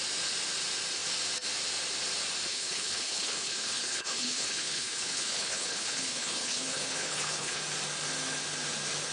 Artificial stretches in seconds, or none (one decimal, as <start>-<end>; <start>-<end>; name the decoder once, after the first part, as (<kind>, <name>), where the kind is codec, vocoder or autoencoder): 2.5-7.6 (codec, HILCodec)